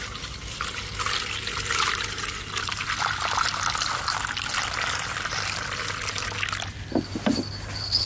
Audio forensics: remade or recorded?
recorded